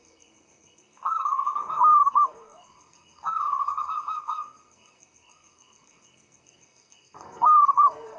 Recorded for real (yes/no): no